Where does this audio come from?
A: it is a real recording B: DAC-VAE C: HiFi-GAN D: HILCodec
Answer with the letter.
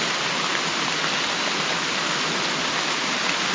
A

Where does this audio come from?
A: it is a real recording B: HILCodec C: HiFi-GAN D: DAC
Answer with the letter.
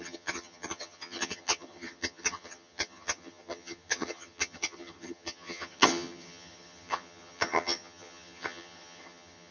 C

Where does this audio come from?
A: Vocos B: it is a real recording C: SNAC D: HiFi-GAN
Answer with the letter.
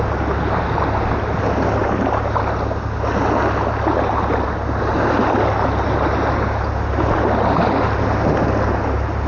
B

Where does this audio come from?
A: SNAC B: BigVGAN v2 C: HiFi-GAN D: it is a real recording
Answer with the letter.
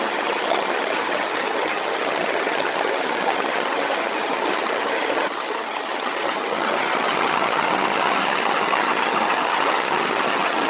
C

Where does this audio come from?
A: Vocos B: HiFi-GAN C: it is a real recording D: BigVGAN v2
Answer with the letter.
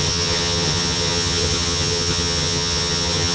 B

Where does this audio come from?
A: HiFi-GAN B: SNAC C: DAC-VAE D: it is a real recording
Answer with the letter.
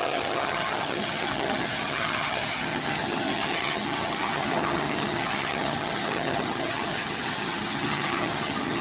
A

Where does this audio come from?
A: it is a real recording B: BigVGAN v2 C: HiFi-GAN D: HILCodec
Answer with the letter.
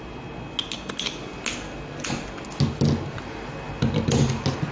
A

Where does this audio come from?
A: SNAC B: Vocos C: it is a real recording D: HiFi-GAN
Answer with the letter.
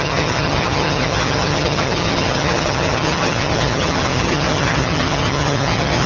D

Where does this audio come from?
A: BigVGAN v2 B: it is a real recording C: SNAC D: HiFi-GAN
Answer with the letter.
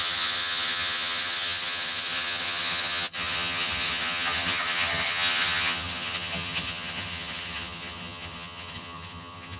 D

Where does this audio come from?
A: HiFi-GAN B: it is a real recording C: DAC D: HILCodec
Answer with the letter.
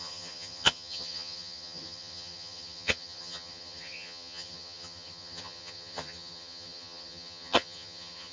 A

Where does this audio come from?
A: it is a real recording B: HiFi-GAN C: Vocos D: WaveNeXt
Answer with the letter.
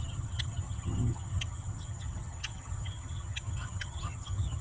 B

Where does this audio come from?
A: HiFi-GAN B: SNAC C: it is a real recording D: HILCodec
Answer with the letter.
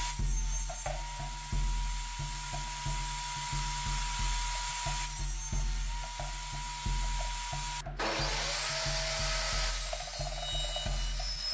C